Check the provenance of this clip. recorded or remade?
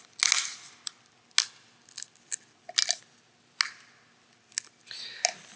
recorded